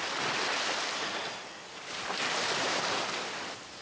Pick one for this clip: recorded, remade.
recorded